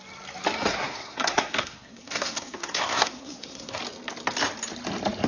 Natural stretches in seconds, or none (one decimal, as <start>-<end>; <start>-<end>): 0.0-0.7; 3.8-5.3